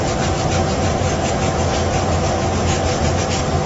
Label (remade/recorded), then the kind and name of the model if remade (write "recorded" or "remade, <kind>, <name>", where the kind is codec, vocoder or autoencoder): recorded